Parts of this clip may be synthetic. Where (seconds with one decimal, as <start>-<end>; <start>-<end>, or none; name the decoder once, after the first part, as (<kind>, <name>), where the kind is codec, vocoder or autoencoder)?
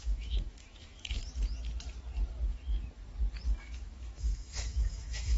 0.0-1.2 (autoencoder, DAC-VAE); 3.6-5.4